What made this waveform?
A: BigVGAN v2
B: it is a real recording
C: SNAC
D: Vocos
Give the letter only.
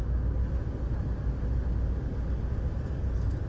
B